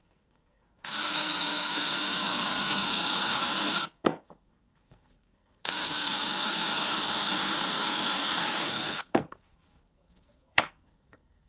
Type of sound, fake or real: fake